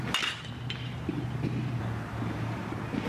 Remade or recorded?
recorded